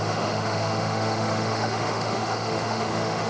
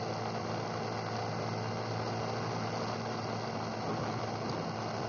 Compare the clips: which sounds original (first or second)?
second